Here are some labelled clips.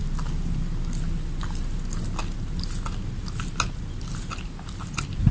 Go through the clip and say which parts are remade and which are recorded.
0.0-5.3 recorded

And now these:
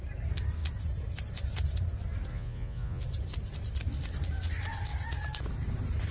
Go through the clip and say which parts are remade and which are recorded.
0.0-2.3 recorded; 2.3-3.0 remade; 3.0-6.1 recorded

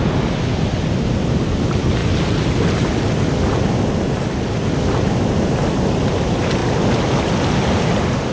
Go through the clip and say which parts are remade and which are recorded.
0.0-8.3 recorded

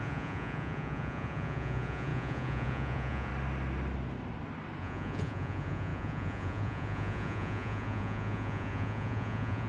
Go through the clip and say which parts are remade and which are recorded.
0.0-3.3 remade; 3.3-4.8 recorded; 4.8-9.7 remade

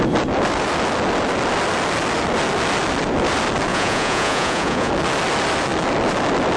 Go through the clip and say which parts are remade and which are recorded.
0.0-3.7 recorded; 3.7-4.9 remade; 4.9-6.6 recorded